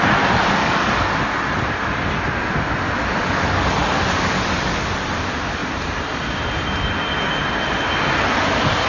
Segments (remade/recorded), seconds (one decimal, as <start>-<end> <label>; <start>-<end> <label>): 0.0-0.6 recorded; 0.6-1.1 remade; 1.1-8.9 recorded